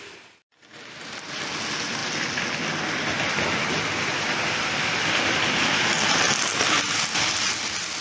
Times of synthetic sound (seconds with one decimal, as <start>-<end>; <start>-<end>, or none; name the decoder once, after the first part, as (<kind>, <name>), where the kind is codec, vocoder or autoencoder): none